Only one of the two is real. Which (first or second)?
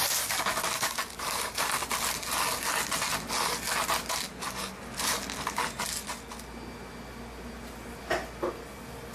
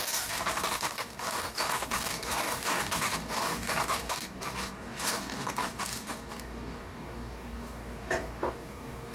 first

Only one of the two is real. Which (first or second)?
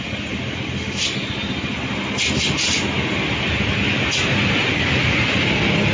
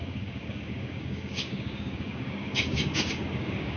first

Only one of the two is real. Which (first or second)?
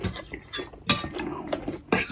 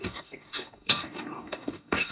first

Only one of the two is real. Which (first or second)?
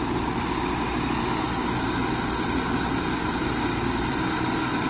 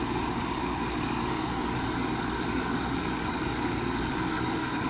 first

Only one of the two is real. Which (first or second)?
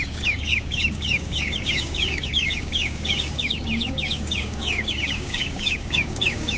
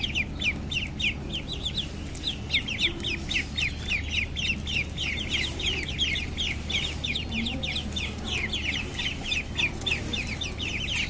second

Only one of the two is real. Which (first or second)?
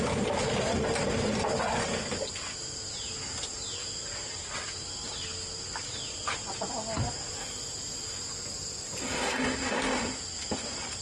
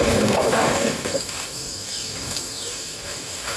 first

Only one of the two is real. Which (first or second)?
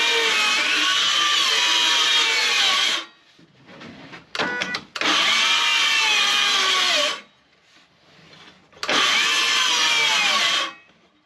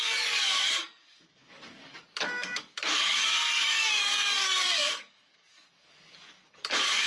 first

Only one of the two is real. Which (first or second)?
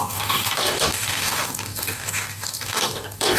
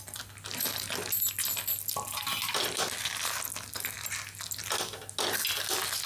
second